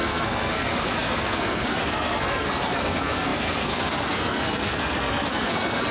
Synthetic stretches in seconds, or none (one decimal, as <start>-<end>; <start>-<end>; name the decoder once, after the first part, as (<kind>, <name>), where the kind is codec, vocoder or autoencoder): 0.0-5.9 (codec, SNAC)